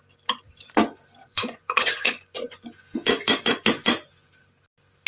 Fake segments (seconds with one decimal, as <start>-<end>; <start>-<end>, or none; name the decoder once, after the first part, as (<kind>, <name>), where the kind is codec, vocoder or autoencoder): 1.2-4.3 (vocoder, Vocos)